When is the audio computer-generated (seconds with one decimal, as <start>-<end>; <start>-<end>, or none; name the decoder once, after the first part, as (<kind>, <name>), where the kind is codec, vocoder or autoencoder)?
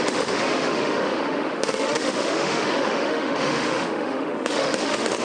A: 0.0-5.2 (autoencoder, DAC-VAE)